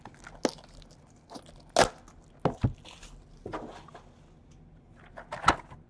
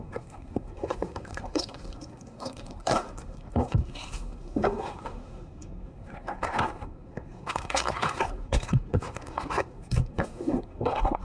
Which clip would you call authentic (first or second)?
first